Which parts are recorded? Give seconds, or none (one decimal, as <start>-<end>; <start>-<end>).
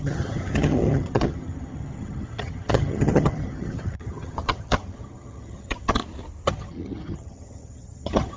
6.0-6.5